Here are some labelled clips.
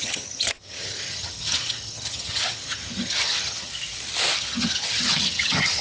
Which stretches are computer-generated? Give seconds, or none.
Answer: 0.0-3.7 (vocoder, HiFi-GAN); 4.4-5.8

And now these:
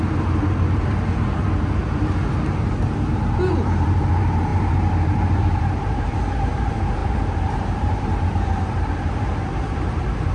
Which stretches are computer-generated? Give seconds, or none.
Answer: 0.0-10.3 (vocoder, BigVGAN v2)

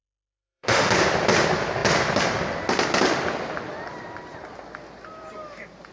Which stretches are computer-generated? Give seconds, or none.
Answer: 0.0-0.9 (autoencoder, DAC-VAE)

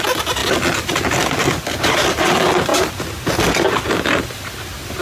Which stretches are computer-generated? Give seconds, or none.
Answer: none

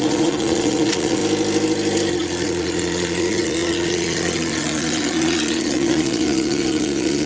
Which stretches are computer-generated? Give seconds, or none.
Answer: 0.0-1.2 (vocoder, Vocos); 2.1-7.3